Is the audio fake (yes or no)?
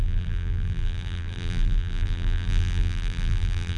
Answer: yes